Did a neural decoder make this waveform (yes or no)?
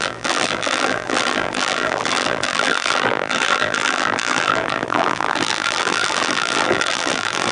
yes